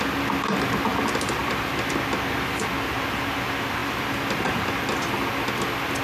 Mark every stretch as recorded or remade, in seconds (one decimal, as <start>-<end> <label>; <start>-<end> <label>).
0.0-0.9 recorded; 0.9-1.7 remade; 1.7-3.8 recorded; 3.8-5.1 remade; 5.1-6.0 recorded